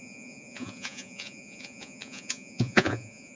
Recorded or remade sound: remade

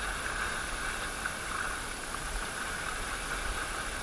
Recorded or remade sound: recorded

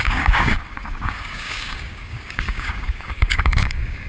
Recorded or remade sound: remade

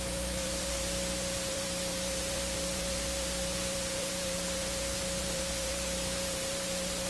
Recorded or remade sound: remade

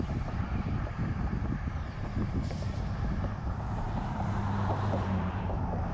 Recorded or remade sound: remade